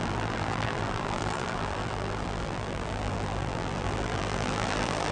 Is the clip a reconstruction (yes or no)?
yes